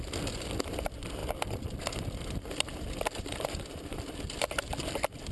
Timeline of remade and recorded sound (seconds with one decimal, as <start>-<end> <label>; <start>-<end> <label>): 0.0-5.3 recorded